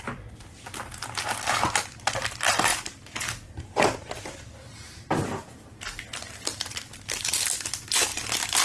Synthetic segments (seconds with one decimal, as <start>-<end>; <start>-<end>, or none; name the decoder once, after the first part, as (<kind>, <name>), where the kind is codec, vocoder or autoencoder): none